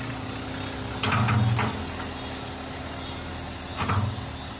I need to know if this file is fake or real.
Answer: real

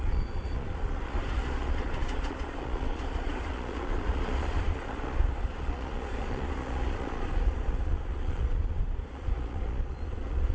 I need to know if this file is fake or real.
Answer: fake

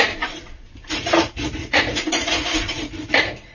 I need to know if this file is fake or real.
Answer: fake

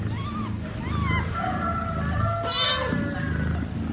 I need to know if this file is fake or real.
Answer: real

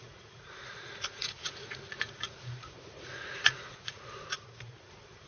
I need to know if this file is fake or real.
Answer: fake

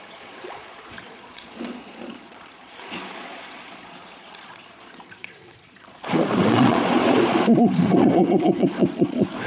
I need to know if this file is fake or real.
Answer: fake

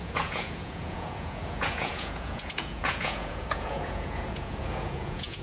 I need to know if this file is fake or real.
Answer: fake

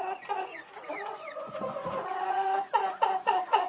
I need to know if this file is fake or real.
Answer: fake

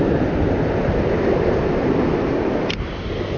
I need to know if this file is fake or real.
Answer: real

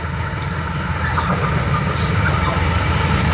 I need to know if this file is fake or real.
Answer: real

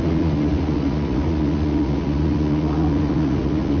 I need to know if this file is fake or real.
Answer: fake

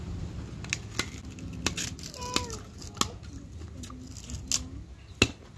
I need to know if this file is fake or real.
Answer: real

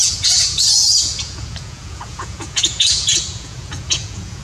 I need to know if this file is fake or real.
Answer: fake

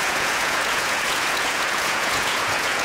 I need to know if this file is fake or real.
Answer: fake